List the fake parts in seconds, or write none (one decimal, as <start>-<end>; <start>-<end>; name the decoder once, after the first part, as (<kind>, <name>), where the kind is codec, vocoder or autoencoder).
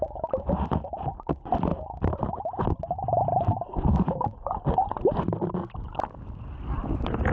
none